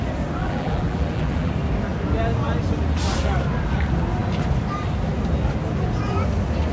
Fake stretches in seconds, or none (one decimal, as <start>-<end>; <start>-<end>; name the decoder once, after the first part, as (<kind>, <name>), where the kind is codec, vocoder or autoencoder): 0.4-1.5 (vocoder, BigVGAN v2)